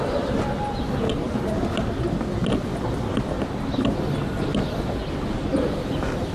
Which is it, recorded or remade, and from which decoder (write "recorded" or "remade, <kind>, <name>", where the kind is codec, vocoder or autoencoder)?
recorded